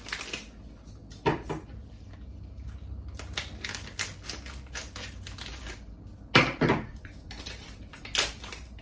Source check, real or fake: real